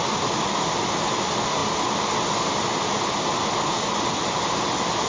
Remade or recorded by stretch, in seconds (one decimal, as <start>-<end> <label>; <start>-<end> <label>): 0.0-5.1 recorded